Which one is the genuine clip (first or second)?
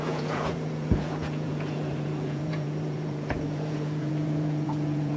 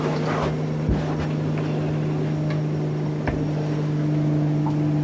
second